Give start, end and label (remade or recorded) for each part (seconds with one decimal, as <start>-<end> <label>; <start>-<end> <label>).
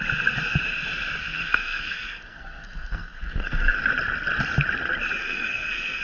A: 0.0-1.2 recorded; 1.2-3.8 remade; 3.8-5.2 recorded; 5.2-6.0 remade